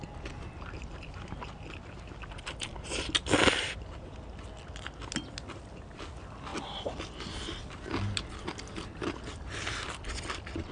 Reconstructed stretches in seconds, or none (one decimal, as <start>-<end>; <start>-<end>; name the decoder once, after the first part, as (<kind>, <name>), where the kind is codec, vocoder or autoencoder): none